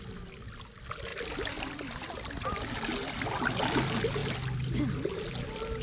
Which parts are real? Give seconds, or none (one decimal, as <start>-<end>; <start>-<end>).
0.0-5.8